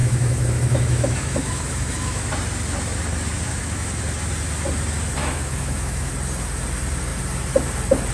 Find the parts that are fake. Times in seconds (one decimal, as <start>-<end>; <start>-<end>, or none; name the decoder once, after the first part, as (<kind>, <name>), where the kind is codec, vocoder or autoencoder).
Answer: 0.0-2.3 (autoencoder, DAC-VAE); 3.5-4.0; 5.2-6.1